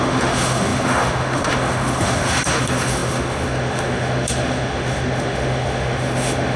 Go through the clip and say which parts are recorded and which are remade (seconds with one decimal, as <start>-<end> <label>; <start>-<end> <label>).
0.0-6.6 remade